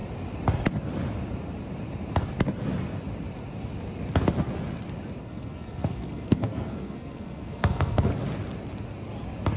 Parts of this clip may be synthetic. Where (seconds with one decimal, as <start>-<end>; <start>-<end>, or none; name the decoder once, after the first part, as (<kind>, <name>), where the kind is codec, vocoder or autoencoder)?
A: 5.2-8.1 (codec, SNAC)